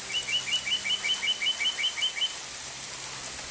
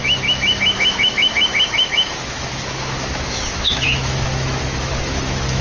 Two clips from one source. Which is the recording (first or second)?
first